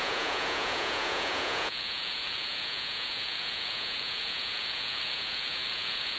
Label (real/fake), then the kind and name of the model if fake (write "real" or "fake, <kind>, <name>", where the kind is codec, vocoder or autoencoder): fake, vocoder, Vocos